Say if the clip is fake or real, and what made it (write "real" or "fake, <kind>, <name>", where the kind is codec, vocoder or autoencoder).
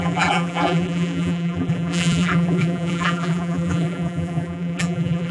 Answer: fake, vocoder, BigVGAN v2